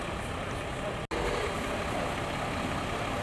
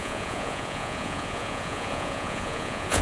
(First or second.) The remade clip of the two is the second